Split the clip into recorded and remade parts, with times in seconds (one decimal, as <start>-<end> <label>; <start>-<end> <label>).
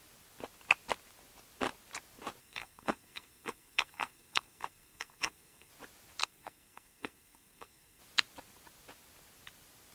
0.0-2.4 recorded; 2.4-5.7 remade; 5.7-6.2 recorded; 6.2-8.0 remade; 8.0-9.9 recorded